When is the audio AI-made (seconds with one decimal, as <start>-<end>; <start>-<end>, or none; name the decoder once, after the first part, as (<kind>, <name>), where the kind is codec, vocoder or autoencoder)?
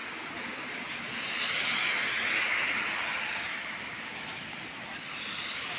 3.5-4.1 (vocoder, BigVGAN v2); 4.9-5.8